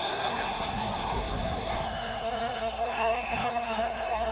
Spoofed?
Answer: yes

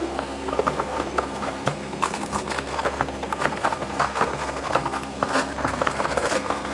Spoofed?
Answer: yes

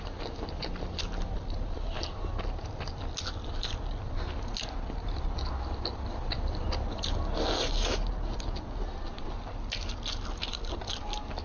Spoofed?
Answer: no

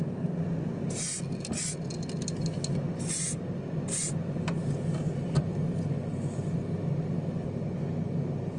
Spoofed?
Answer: no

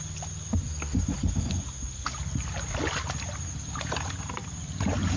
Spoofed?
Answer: no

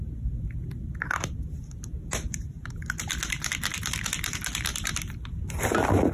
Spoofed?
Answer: no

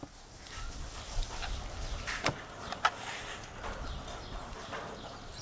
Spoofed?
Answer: no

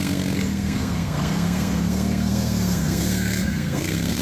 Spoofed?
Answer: yes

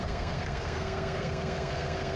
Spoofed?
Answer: yes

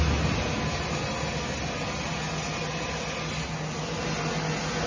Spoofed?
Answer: no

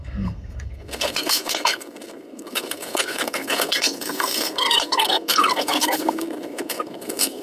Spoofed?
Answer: yes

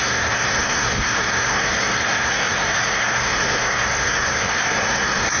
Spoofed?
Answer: yes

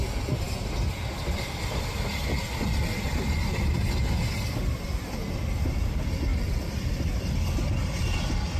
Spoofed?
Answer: no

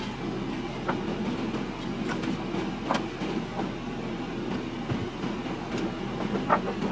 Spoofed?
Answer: no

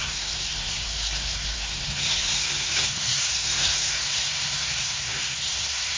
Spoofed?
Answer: yes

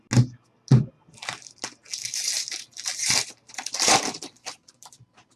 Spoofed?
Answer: no